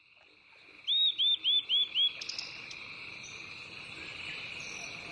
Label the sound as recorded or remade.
recorded